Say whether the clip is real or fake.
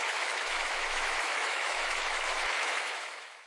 fake